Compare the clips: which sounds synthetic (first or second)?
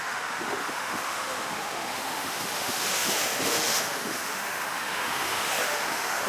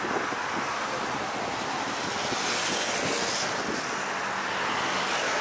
first